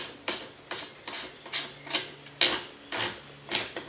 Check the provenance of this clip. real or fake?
real